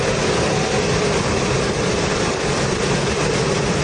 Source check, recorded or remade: recorded